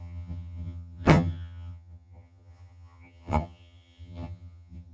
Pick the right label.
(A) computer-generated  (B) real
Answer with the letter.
A